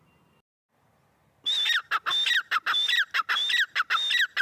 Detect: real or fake real